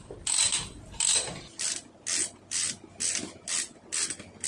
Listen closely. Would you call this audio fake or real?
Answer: real